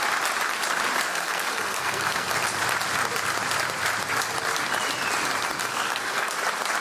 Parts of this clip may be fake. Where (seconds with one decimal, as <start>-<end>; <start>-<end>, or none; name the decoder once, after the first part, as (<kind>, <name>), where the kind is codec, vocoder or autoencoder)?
1.1-2.3 (codec, SNAC); 5.6-6.3

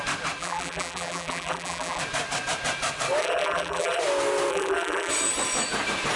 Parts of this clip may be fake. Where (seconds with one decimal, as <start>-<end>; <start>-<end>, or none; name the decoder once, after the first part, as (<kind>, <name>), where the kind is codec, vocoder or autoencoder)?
0.4-2.0 (vocoder, BigVGAN v2); 3.2-4.0; 4.5-5.1